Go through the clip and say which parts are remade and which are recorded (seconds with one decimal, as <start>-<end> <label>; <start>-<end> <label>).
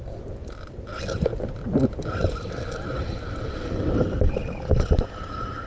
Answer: 0.0-5.7 recorded